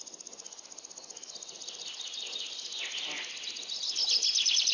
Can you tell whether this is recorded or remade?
recorded